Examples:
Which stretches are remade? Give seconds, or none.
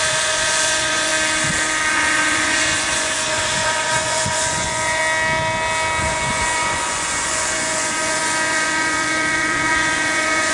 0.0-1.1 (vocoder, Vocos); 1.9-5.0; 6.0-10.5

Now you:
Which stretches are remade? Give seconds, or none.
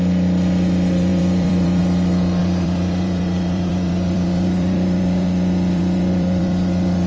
1.1-1.8 (vocoder, BigVGAN v2); 2.4-7.1